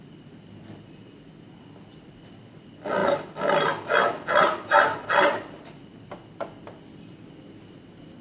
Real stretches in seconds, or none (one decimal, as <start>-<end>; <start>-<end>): 0.0-8.2